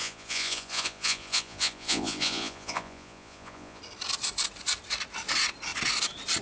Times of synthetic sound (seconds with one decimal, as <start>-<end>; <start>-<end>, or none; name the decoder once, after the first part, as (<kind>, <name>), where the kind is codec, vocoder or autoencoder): 0.0-3.8 (vocoder, Vocos)